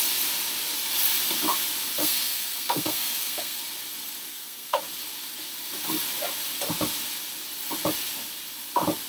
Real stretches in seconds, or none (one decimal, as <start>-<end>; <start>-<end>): 0.0-2.0; 3.6-4.3; 4.8-9.1